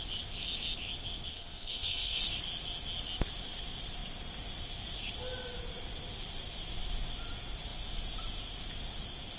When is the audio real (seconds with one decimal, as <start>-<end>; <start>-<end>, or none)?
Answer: 0.0-1.3; 2.2-9.4